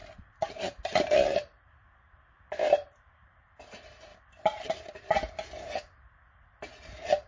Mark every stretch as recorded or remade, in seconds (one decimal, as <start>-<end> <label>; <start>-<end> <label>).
0.0-3.6 remade; 3.6-7.3 recorded